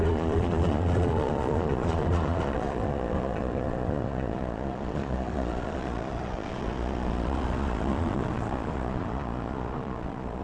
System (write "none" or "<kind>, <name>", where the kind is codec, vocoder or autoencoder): vocoder, Vocos